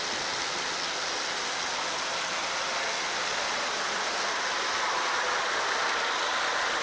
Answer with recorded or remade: recorded